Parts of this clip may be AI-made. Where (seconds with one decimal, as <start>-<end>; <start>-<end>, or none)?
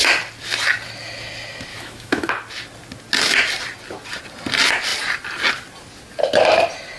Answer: 1.7-2.3